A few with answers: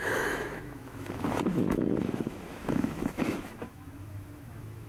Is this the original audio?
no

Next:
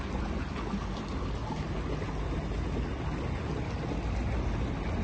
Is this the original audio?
yes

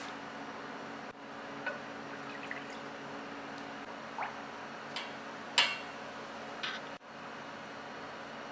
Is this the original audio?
yes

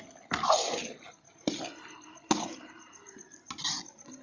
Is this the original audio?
yes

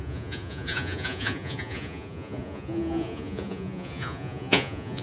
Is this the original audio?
no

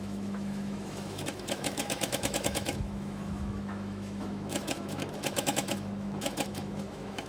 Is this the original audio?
no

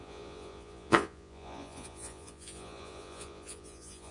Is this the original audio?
no